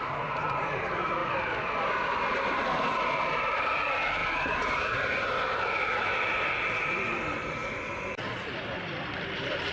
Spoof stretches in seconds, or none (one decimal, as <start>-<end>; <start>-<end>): 0.0-1.2; 2.3-4.2; 6.6-7.6; 8.5-9.7